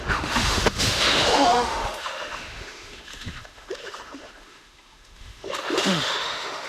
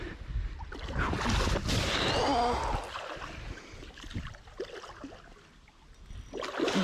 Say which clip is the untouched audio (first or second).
second